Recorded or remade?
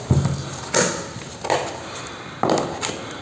recorded